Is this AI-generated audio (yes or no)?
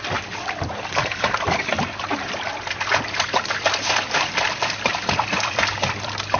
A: yes